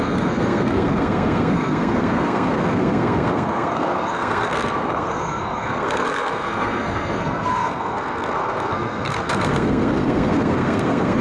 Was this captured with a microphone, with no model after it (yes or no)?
no